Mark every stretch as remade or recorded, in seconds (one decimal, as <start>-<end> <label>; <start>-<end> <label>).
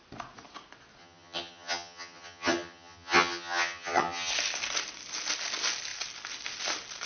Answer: 0.0-1.0 recorded; 1.0-4.3 remade; 4.3-7.1 recorded